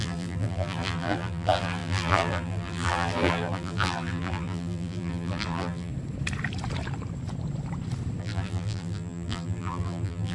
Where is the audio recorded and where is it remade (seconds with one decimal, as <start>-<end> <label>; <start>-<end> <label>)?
0.0-5.9 remade; 5.9-8.2 recorded; 8.2-10.3 remade